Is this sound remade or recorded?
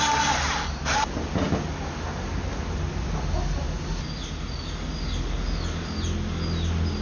recorded